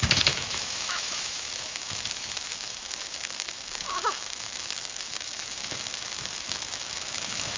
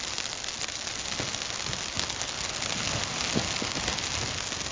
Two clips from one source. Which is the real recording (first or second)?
second